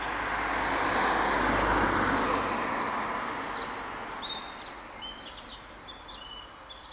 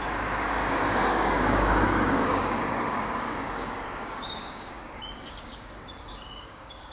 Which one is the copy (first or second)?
second